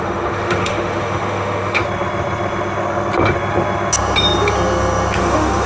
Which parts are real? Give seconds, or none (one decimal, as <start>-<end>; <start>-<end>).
1.8-5.2